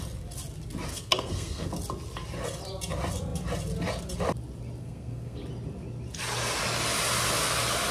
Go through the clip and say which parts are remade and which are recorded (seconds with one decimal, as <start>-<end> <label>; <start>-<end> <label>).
0.0-0.9 recorded; 0.9-1.7 remade; 1.7-4.8 recorded; 4.8-5.4 remade; 5.4-7.9 recorded